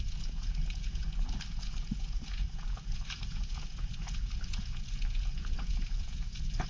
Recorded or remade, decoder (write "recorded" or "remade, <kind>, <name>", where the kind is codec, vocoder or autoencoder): remade, vocoder, Vocos